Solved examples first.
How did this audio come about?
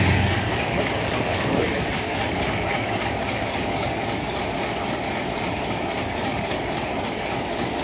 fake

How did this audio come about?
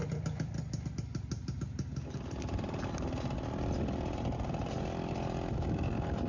real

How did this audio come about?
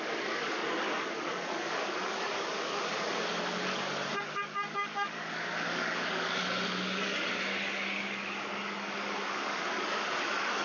fake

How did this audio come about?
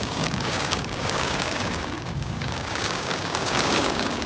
fake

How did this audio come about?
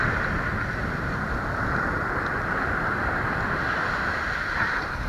real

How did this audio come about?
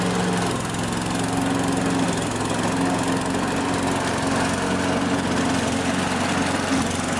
real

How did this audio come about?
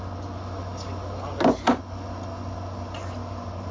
real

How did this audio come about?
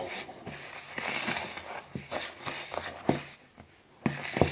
real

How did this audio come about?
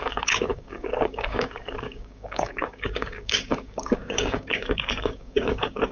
fake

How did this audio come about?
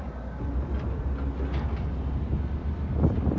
real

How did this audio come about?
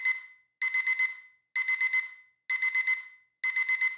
real